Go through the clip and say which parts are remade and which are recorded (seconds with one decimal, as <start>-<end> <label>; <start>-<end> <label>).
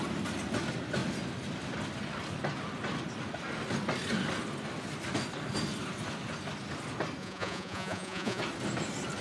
0.0-7.2 recorded; 7.2-8.4 remade; 8.4-9.2 recorded